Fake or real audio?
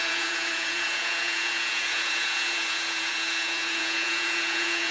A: fake